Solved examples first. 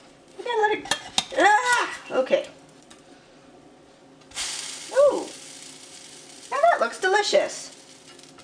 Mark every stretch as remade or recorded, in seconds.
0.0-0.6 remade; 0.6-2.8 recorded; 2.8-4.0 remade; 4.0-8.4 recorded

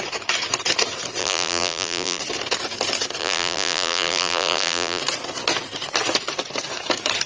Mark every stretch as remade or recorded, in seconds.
0.0-1.2 recorded; 1.2-2.2 remade; 2.2-3.2 recorded; 3.2-5.0 remade; 5.0-7.3 recorded

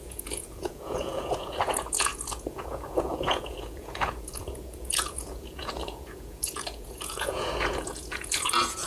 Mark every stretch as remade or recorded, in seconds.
0.0-8.9 remade

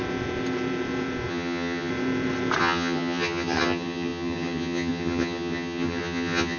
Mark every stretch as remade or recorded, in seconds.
0.0-1.3 recorded; 1.3-1.9 remade; 1.9-2.6 recorded; 2.6-6.6 remade